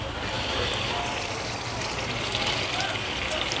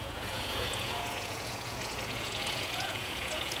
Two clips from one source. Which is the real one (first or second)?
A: first